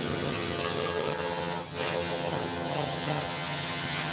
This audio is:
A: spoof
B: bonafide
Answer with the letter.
A